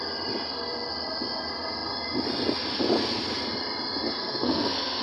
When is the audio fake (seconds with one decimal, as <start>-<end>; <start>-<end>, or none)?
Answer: 4.2-5.0